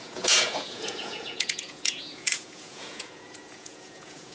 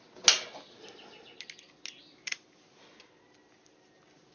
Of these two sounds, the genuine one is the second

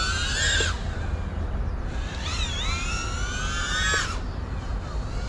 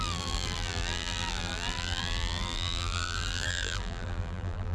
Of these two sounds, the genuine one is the first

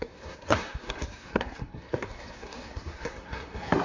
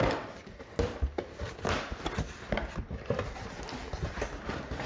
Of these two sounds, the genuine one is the second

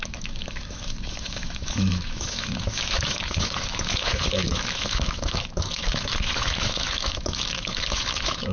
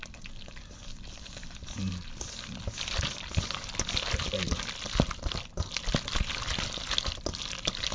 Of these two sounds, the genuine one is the second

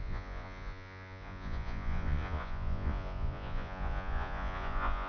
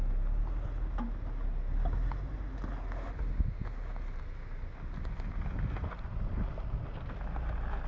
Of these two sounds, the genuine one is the second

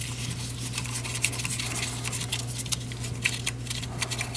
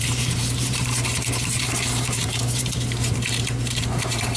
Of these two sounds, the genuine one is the first